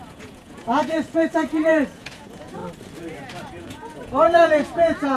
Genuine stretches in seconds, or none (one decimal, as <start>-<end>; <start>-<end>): 2.6-3.5